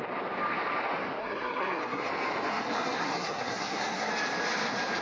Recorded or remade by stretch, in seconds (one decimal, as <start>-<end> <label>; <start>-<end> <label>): 0.0-1.2 recorded; 1.2-2.1 remade; 2.1-2.5 recorded; 2.5-4.1 remade; 4.1-5.0 recorded